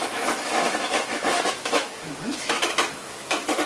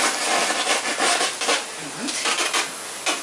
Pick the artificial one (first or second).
first